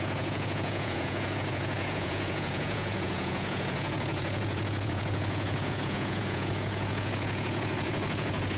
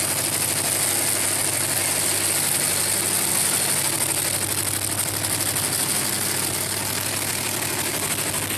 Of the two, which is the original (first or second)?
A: second